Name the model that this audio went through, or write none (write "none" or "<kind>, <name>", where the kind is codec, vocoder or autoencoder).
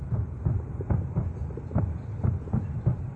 none